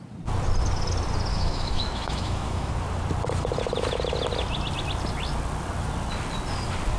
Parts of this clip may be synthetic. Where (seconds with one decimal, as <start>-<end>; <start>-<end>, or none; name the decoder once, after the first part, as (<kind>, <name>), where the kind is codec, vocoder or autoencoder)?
1.3-2.7 (autoencoder, DAC-VAE)